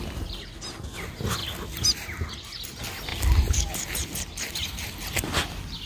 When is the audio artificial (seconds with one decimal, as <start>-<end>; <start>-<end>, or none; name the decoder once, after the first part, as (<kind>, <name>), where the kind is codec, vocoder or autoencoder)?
none